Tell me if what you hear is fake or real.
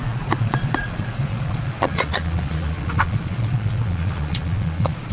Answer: fake